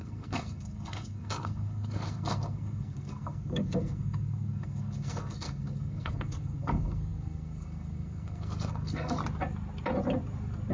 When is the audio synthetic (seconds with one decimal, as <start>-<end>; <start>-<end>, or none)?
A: 0.0-9.2